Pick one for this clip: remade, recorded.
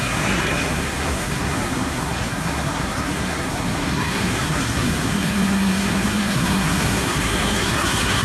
remade